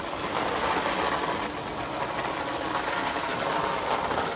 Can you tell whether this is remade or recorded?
recorded